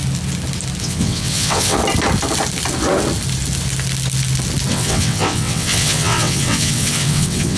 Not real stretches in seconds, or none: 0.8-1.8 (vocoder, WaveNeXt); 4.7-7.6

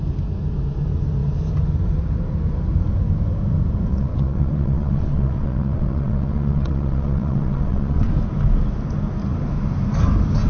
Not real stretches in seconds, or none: 3.9-8.1 (vocoder, WaveNeXt)

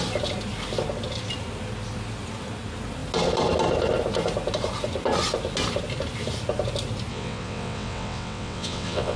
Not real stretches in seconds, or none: 7.1-9.2 (vocoder, WaveNeXt)

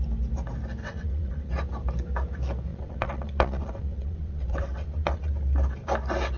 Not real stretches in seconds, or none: 0.8-1.5 (vocoder, WaveNeXt); 2.7-5.3

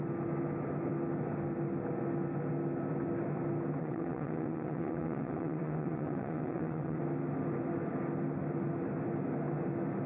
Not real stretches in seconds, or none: 3.8-7.0 (vocoder, WaveNeXt)

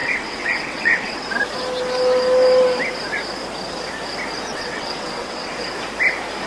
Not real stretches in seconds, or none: 0.0-1.3 (vocoder, WaveNeXt); 4.5-5.5

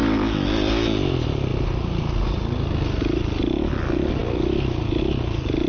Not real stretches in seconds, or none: none